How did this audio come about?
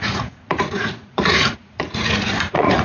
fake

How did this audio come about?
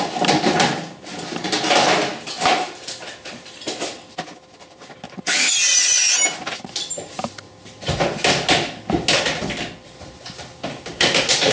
real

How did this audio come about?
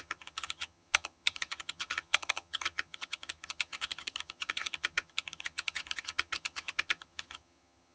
fake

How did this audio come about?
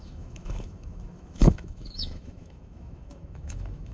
fake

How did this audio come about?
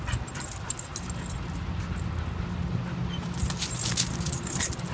real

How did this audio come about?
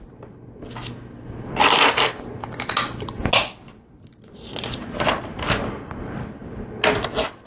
real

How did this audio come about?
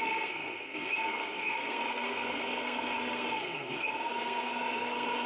fake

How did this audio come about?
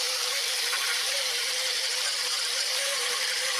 fake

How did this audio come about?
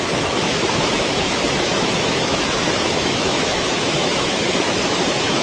fake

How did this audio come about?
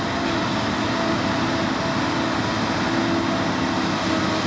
real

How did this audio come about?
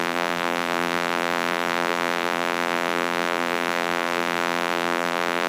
fake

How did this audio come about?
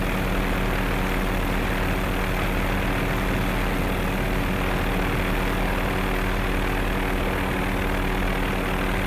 real